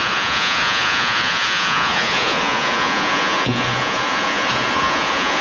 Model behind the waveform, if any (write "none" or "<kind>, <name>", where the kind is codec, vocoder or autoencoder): vocoder, Vocos